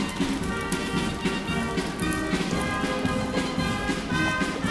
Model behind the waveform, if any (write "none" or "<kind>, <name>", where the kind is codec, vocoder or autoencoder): none